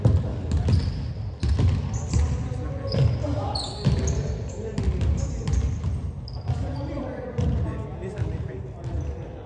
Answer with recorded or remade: recorded